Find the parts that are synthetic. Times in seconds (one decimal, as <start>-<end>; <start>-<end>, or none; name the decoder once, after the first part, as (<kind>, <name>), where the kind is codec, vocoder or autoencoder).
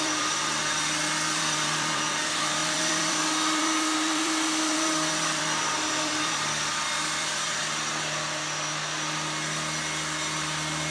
0.0-7.6 (vocoder, BigVGAN v2)